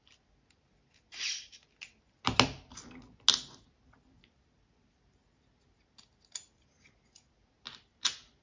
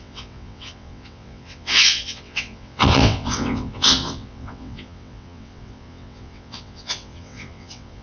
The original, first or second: first